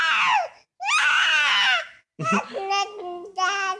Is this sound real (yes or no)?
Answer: yes